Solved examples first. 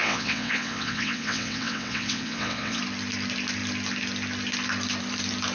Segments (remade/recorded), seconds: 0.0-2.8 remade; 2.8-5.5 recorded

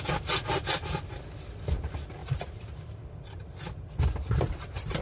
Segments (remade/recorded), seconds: 0.0-2.2 recorded; 2.2-3.2 remade; 3.2-5.0 recorded